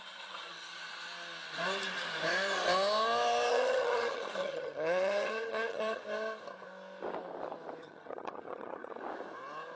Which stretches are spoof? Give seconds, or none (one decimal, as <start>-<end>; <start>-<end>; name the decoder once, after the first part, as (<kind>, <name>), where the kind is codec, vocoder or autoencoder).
0.0-0.8 (vocoder, HiFi-GAN); 3.5-6.0; 7.8-9.0